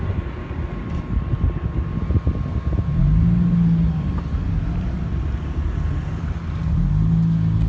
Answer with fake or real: real